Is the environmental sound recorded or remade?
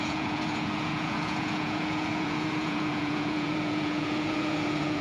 remade